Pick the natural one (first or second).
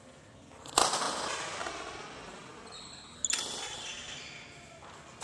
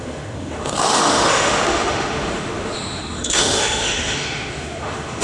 first